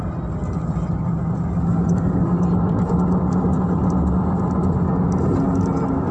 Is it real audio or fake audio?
real